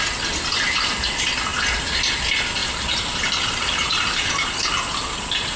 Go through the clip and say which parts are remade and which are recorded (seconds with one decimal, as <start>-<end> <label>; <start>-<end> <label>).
0.0-1.5 recorded; 1.5-2.0 remade; 2.0-2.6 recorded; 2.6-4.5 remade; 4.5-5.6 recorded